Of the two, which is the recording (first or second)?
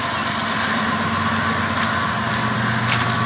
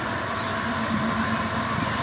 first